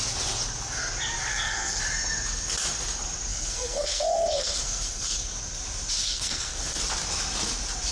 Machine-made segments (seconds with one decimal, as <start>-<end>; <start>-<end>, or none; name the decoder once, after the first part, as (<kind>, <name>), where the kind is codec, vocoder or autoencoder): 1.3-1.8 (codec, SNAC); 3.3-5.3; 6.0-6.8